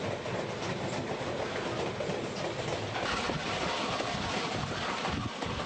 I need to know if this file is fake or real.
real